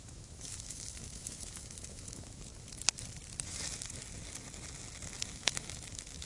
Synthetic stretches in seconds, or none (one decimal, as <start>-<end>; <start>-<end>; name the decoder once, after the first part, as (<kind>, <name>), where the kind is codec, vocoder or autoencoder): 0.0-2.5 (autoencoder, DAC-VAE); 5.2-6.3

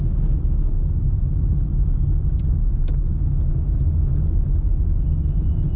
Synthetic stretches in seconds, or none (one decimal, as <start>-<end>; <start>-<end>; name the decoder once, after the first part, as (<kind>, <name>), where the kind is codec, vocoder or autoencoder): none

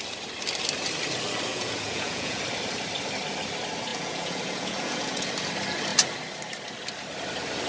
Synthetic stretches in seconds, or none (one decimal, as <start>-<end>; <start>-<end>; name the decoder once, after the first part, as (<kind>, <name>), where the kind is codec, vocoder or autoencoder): 1.5-2.4 (vocoder, Vocos); 3.9-5.3

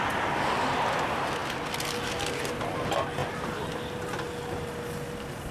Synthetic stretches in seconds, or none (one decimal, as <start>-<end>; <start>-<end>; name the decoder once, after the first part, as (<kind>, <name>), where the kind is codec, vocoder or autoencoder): 3.2-3.8 (vocoder, BigVGAN v2)

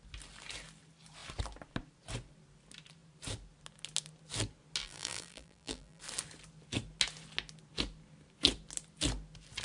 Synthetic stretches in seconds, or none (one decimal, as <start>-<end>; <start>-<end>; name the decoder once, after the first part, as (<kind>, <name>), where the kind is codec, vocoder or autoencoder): 4.8-6.0 (vocoder, BigVGAN v2)